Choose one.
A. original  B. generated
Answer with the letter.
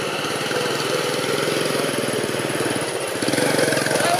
B